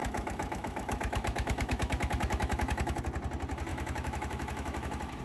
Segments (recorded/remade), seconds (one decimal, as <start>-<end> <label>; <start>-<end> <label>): 0.0-3.0 remade; 3.0-3.7 recorded; 3.7-5.2 remade